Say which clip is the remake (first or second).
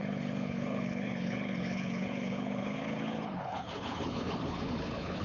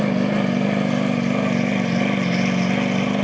first